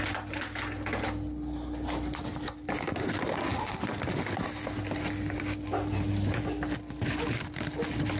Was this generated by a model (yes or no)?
no